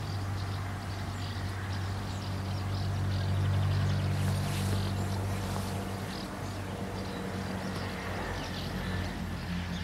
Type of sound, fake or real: real